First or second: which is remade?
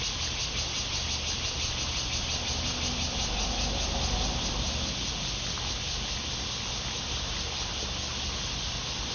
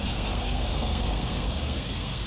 second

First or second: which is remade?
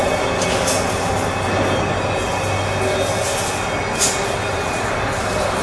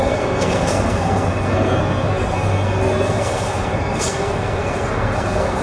second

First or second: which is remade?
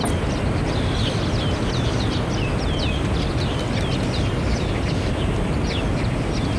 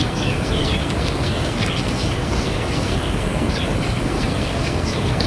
second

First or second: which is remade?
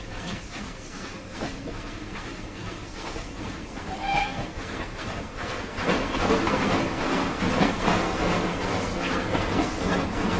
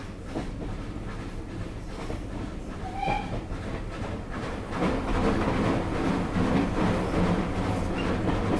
first